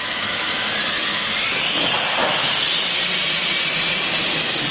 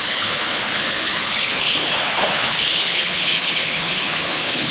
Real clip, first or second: first